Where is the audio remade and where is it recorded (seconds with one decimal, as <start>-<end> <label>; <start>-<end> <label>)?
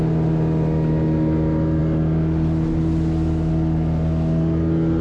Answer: 0.0-5.0 recorded